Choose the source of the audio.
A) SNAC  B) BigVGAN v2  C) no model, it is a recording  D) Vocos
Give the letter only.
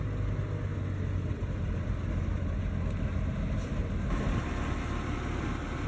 C